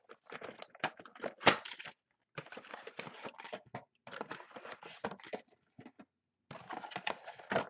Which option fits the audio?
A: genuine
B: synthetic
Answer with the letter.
A